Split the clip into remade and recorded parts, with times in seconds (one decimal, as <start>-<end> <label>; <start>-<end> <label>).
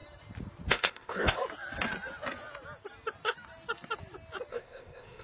0.0-0.7 recorded; 0.7-1.4 remade; 1.4-4.5 recorded; 4.5-5.2 remade